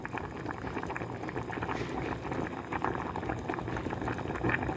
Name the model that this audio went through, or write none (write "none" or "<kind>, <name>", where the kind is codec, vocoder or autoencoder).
none